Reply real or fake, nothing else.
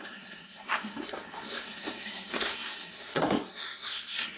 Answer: fake